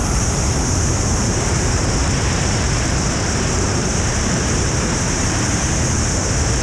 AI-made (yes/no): yes